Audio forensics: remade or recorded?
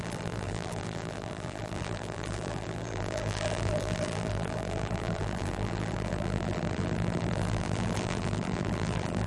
remade